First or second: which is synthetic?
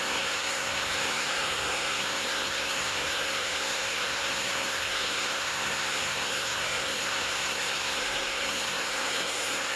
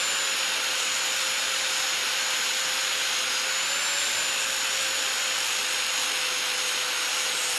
first